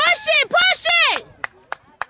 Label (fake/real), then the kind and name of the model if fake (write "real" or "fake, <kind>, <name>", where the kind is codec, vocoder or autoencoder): fake, vocoder, BigVGAN v2